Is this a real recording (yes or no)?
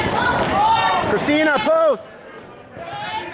yes